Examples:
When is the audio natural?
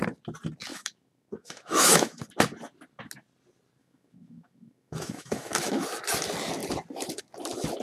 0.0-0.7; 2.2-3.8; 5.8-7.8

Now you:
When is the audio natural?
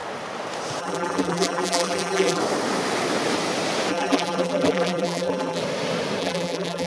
0.0-0.8; 2.4-3.9; 5.6-6.2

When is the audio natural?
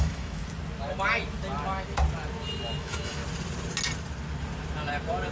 0.4-2.8; 3.2-5.3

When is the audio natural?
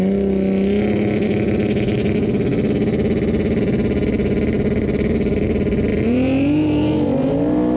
0.0-7.8